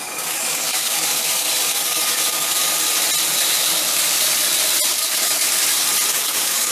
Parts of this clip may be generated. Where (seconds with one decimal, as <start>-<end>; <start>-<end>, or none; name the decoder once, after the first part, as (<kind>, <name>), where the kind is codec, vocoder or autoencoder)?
0.0-2.6 (codec, DAC); 4.9-5.4; 6.1-6.7

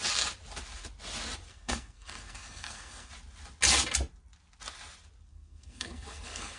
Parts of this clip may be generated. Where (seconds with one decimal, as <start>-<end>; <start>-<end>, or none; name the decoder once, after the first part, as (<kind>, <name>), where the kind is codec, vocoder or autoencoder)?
1.5-3.1 (codec, SNAC); 5.3-6.6

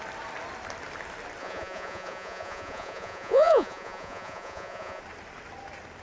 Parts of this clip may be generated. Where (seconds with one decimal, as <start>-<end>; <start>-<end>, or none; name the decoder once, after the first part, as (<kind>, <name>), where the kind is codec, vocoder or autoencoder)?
1.4-5.0 (vocoder, Vocos)

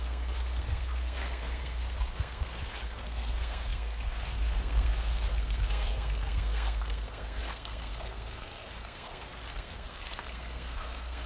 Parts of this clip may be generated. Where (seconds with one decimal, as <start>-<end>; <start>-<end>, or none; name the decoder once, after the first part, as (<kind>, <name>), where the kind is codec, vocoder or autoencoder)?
0.0-11.3 (codec, SNAC)

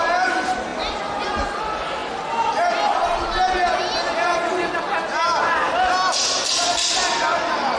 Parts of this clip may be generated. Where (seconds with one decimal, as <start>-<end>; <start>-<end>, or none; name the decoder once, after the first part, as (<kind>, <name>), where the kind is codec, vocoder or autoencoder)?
none